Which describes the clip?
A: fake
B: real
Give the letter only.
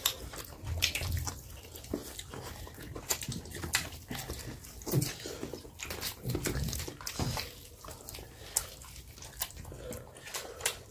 B